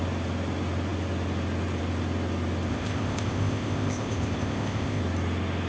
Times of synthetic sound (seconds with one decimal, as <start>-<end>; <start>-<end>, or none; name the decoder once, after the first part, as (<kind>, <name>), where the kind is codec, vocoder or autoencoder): 2.7-5.0 (codec, ZipCodec)